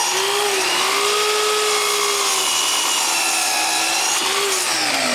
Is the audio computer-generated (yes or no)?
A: no